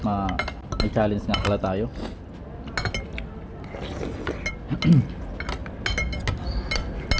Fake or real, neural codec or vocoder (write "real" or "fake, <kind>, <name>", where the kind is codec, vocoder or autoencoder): real